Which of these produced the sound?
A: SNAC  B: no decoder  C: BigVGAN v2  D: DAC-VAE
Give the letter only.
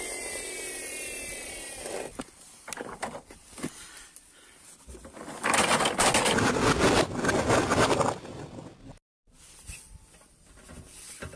B